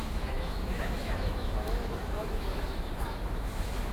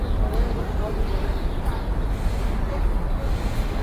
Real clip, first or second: second